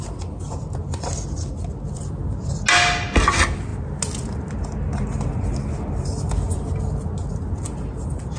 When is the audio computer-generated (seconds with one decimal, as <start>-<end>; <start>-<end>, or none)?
none

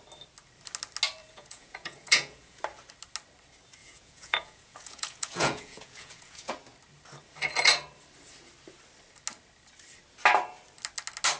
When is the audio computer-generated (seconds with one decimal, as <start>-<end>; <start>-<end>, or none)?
1.2-2.6; 3.8-6.5

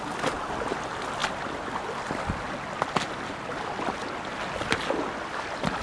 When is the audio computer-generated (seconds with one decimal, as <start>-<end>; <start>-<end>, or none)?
none

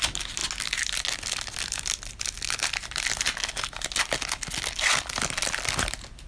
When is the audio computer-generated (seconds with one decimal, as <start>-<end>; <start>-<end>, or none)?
none